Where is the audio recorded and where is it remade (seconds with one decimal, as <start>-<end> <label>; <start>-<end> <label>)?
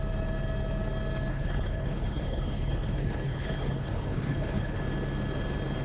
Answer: 0.0-1.3 recorded; 1.3-4.8 remade; 4.8-5.8 recorded